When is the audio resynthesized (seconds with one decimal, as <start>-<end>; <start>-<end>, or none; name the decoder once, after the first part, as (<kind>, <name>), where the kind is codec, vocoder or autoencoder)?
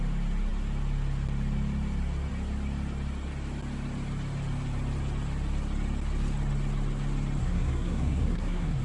7.4-8.8 (codec, SNAC)